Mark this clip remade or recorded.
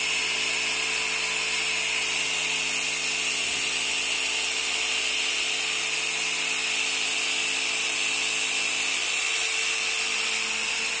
recorded